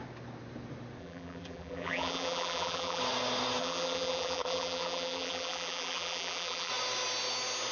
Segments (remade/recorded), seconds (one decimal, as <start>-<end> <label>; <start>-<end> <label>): 0.0-1.0 recorded; 1.0-3.0 remade; 3.0-3.6 recorded; 3.6-6.7 remade; 6.7-7.7 recorded